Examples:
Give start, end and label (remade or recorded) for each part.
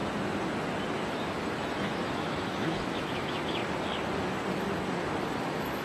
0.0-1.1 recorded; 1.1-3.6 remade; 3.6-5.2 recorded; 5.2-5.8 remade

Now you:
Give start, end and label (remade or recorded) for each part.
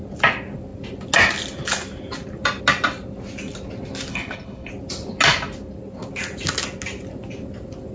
0.0-4.1 recorded; 4.1-4.7 remade; 4.7-7.9 recorded